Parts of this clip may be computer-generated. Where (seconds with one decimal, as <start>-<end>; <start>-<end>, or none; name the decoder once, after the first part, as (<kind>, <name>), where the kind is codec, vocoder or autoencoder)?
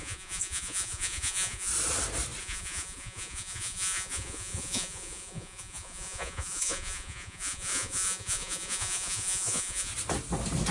0.0-1.7 (vocoder, Vocos); 2.4-9.9